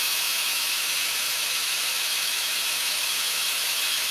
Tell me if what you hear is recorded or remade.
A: remade